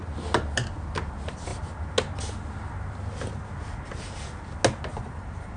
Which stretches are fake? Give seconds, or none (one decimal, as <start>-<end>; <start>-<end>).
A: 4.9-5.6